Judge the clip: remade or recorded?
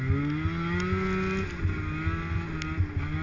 recorded